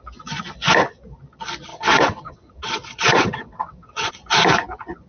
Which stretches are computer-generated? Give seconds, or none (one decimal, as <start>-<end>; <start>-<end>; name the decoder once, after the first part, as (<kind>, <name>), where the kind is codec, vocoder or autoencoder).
1.7-4.1 (vocoder, WaveNeXt)